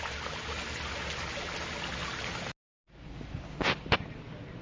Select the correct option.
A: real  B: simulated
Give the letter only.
A